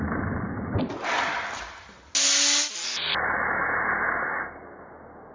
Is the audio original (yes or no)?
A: yes